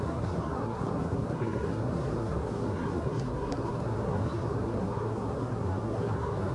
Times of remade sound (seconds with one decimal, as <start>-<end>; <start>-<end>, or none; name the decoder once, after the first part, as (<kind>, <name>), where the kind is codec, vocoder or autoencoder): 0.0-6.5 (codec, SNAC)